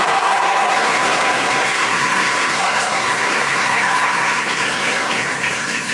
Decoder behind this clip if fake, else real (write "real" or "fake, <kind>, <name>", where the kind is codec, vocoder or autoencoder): fake, codec, SNAC